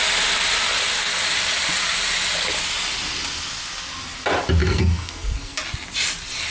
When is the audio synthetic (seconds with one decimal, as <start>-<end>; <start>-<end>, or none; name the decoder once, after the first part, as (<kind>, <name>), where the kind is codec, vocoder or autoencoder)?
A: 4.6-5.6 (codec, SNAC)